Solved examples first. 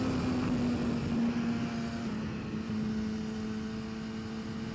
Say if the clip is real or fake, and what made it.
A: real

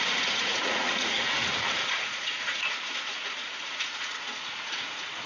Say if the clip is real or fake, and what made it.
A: fake, vocoder, Vocos